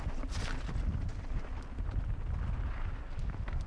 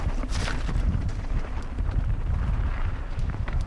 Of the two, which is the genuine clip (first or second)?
first